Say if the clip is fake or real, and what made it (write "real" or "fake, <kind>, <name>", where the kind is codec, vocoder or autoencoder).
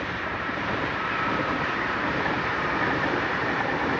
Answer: fake, vocoder, BigVGAN v2